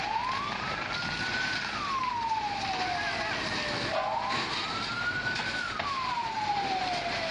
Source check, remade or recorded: recorded